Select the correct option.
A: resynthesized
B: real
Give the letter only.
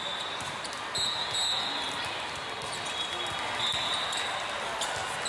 B